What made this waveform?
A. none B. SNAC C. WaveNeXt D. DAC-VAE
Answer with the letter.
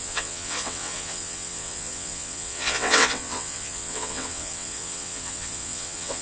C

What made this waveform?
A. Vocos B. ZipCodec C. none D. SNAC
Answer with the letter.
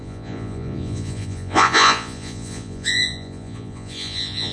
A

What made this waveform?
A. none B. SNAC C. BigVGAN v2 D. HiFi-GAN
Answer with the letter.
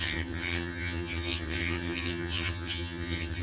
D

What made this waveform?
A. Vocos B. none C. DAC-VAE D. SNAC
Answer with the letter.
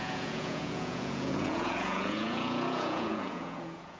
A